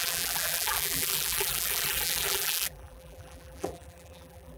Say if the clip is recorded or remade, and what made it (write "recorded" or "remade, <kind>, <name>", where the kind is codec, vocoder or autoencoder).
remade, vocoder, BigVGAN v2